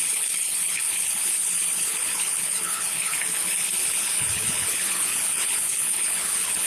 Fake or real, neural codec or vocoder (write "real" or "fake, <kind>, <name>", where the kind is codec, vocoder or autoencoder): fake, codec, HILCodec